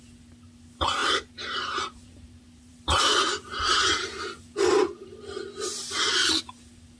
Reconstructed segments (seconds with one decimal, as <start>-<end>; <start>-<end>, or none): 1.0-5.2